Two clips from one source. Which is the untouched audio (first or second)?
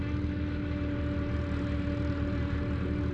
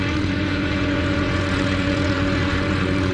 first